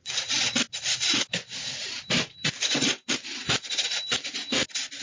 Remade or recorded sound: recorded